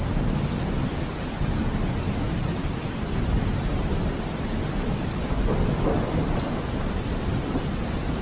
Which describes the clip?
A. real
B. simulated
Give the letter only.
A